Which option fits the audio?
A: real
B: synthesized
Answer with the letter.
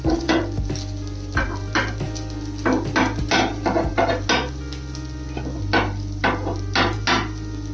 A